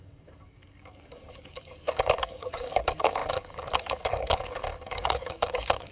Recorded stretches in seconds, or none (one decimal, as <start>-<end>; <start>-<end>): none